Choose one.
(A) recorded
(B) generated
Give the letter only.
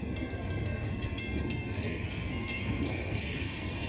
B